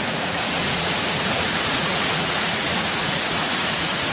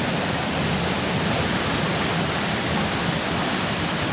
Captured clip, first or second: second